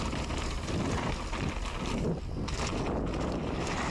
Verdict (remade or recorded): recorded